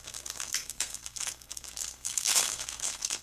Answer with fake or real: fake